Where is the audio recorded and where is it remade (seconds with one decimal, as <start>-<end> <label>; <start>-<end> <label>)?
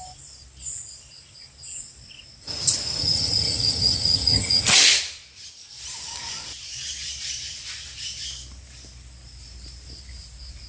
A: 0.0-3.0 recorded; 3.0-4.7 remade; 4.7-10.7 recorded